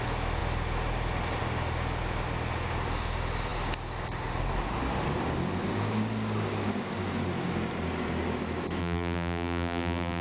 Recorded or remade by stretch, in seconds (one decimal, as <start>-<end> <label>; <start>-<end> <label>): 0.0-8.8 recorded; 8.8-10.2 remade